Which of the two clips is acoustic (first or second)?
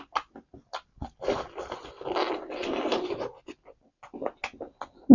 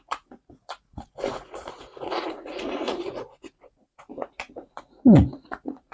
first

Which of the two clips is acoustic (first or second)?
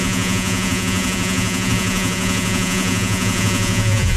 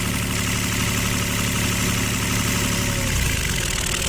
second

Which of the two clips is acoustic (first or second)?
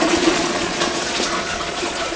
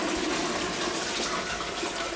second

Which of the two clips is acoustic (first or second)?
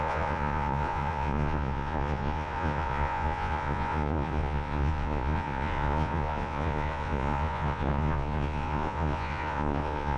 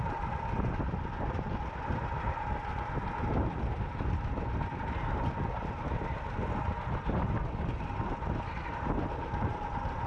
second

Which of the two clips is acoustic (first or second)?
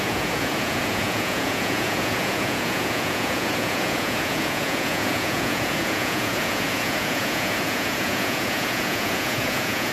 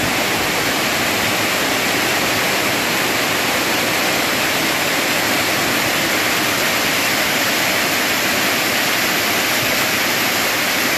second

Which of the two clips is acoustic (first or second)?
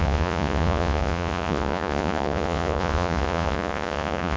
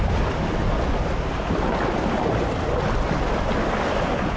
second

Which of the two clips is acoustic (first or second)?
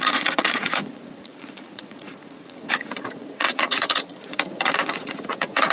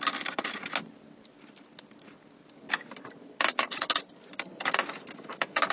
second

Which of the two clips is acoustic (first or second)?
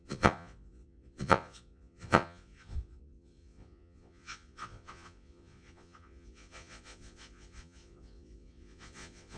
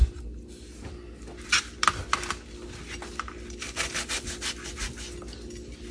second